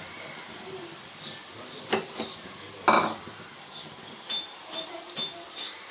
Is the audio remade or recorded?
recorded